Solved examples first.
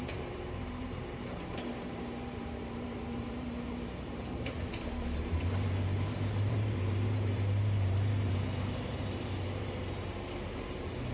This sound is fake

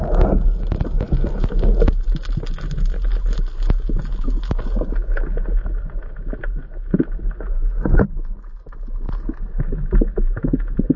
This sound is real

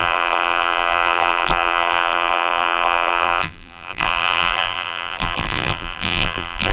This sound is fake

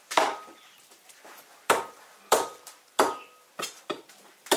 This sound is fake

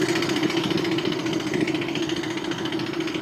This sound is real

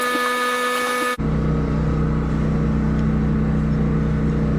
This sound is real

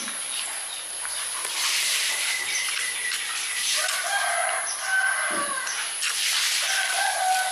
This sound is real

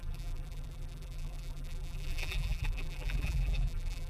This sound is fake